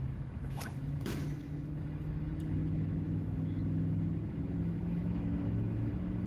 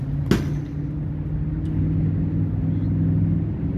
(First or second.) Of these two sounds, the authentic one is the second